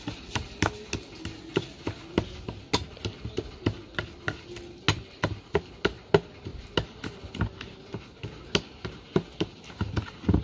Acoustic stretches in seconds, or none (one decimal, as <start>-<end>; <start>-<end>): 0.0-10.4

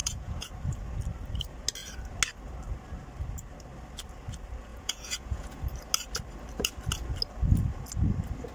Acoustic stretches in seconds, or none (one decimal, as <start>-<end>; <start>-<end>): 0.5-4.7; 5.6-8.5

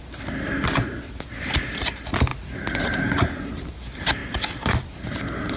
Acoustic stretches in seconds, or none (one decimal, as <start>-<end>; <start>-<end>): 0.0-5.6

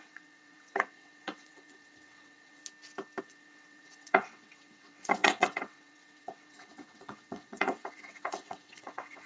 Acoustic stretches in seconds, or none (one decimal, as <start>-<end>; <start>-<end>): 2.6-3.2

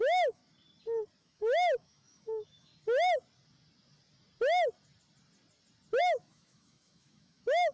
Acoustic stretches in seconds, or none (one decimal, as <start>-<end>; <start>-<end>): 0.4-1.2; 2.7-6.0

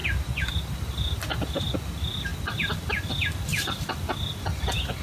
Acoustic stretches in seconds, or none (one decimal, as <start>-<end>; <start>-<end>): 0.0-2.3; 3.1-3.5; 4.4-5.0

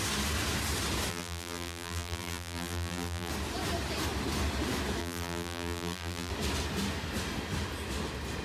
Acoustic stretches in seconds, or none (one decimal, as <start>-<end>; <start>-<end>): 0.0-1.1; 3.3-5.0; 6.3-8.4

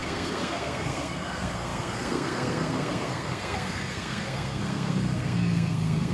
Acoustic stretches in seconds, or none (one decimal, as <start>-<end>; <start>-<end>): none